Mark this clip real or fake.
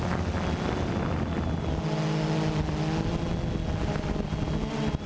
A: real